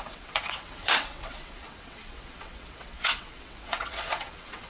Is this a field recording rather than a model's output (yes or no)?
no